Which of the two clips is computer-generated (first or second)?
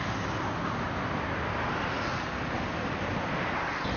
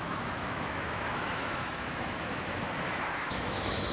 second